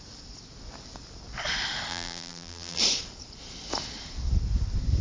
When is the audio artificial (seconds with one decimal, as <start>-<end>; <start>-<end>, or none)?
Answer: 1.9-2.8